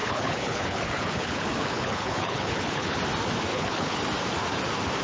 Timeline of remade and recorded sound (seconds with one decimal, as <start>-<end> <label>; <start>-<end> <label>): 0.0-3.0 remade; 3.0-3.5 recorded; 3.5-4.0 remade; 4.0-5.0 recorded